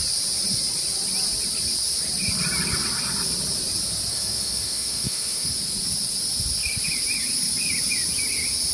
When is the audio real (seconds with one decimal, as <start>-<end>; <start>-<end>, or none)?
0.0-4.1; 5.5-8.7